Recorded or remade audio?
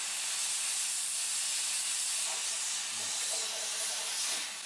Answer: recorded